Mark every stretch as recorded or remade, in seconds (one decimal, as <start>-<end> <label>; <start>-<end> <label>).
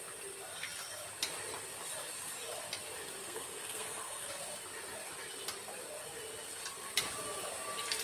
0.0-3.2 recorded; 3.2-4.3 remade; 4.3-8.0 recorded